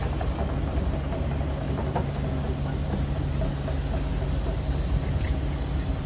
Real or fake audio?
real